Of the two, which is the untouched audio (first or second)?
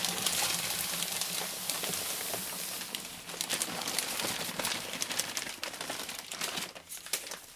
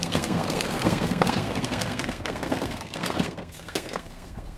first